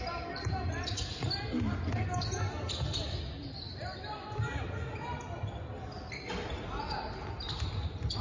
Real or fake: real